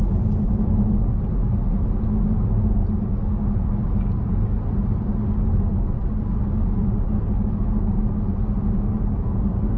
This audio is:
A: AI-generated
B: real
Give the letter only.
B